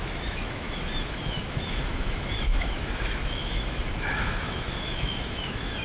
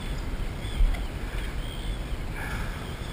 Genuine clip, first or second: second